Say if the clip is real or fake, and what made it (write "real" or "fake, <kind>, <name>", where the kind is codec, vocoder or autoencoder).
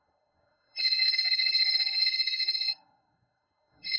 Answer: fake, codec, SNAC